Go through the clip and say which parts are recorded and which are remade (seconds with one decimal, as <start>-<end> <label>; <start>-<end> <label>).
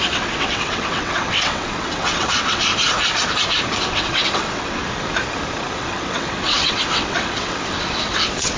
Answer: 0.0-2.7 remade; 2.7-3.9 recorded; 3.9-4.8 remade; 4.8-5.7 recorded; 5.7-8.6 remade